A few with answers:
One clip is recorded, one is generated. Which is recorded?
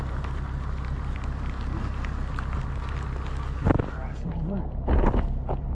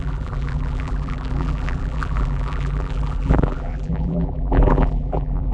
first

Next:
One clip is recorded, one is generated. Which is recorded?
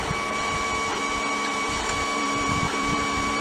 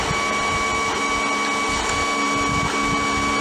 second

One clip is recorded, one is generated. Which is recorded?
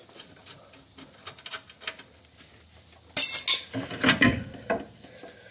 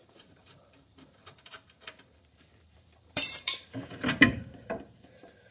first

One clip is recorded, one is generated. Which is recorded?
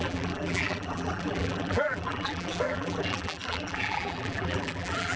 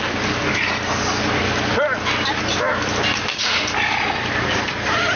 second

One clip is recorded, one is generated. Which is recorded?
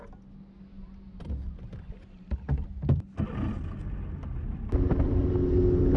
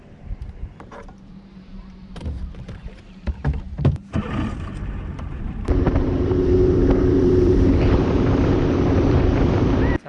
first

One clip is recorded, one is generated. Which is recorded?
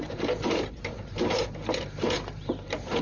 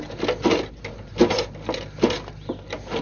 second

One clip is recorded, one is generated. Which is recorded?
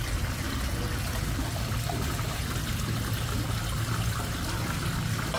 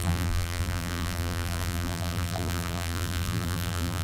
first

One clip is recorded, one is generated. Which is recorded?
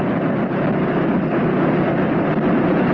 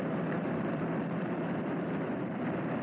first